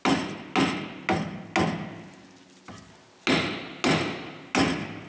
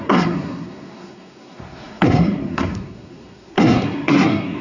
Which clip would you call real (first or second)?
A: first